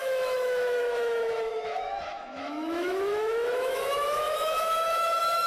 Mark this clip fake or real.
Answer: fake